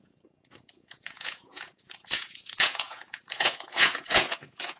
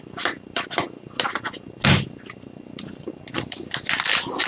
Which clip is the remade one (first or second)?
first